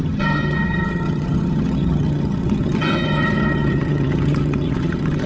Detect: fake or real fake